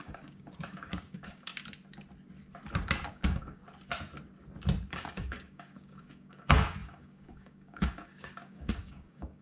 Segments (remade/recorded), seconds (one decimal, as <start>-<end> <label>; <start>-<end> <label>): 0.0-1.5 remade; 1.5-3.1 recorded; 3.1-3.6 remade; 3.6-4.9 recorded; 4.9-9.4 remade